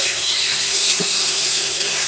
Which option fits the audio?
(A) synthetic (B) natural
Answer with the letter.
A